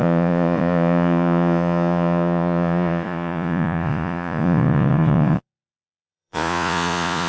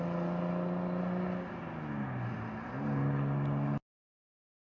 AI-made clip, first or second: first